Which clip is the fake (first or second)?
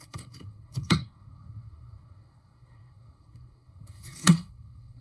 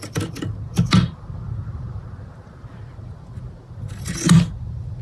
first